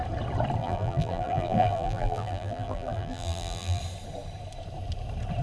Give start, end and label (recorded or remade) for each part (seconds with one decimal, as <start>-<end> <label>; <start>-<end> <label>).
0.0-0.6 recorded; 0.6-3.8 remade; 3.8-5.4 recorded